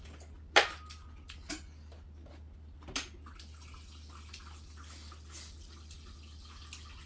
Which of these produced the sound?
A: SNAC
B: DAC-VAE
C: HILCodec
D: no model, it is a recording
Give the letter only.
D